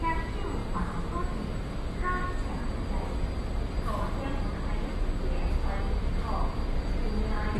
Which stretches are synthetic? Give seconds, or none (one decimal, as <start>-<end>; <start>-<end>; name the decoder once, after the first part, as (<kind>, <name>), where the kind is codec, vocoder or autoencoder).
none